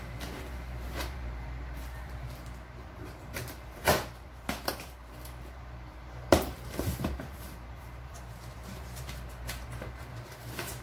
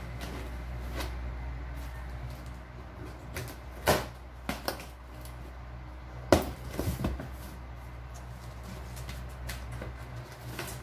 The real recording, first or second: second